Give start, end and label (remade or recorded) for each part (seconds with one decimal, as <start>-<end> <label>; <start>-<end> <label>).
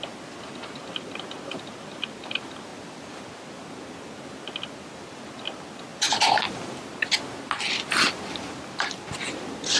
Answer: 0.0-2.7 recorded; 2.7-3.3 remade; 3.3-5.9 recorded; 5.9-6.8 remade; 6.8-9.8 recorded